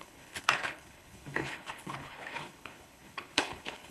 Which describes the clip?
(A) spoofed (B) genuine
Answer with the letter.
A